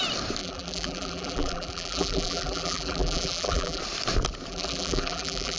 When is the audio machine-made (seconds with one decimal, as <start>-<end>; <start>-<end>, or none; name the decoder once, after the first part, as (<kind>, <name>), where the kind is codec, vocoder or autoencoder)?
0.4-3.8 (vocoder, BigVGAN v2); 4.5-5.6